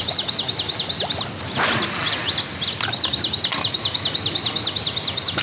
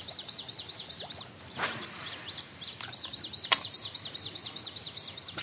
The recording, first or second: first